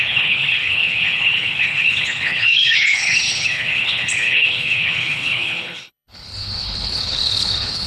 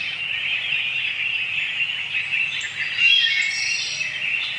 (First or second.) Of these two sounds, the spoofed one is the first